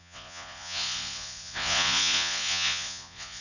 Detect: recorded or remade remade